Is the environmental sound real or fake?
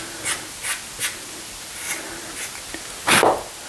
real